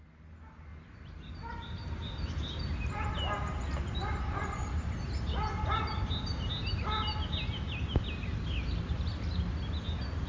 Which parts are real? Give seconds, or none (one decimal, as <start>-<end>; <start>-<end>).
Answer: 0.0-0.7; 1.3-4.0; 5.5-10.3